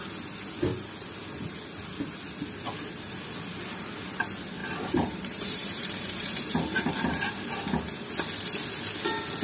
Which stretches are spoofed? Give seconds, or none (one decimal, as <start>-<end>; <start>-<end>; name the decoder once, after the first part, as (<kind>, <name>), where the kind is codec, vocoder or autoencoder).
4.6-6.9 (vocoder, BigVGAN v2)